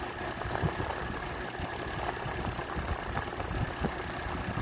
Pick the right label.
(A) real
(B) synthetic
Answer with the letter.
A